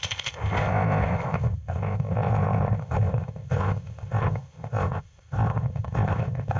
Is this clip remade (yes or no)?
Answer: yes